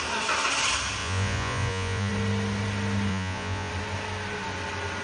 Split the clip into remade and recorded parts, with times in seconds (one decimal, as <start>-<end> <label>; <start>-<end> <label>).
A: 0.0-1.0 recorded; 1.0-2.1 remade; 2.1-3.1 recorded; 3.1-3.7 remade; 3.7-5.0 recorded